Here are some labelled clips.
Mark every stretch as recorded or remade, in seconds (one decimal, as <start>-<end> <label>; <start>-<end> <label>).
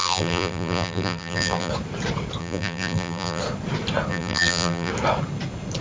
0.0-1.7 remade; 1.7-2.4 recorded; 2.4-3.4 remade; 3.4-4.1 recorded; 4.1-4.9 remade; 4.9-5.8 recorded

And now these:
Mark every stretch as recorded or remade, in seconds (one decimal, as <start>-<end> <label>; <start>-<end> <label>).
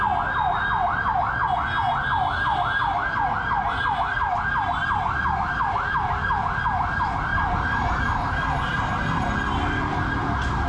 0.0-10.7 recorded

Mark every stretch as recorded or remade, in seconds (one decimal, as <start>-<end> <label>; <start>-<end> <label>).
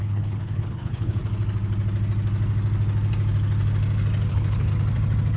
0.0-1.2 remade; 1.2-4.3 recorded; 4.3-4.7 remade; 4.7-5.4 recorded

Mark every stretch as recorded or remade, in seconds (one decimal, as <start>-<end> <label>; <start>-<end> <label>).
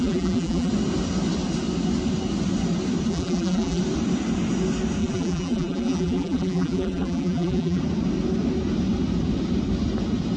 0.0-0.7 remade; 0.7-3.1 recorded; 3.1-3.8 remade; 3.8-5.0 recorded; 5.0-7.8 remade; 7.8-10.4 recorded